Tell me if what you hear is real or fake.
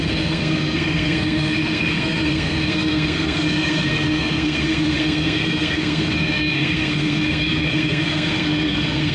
fake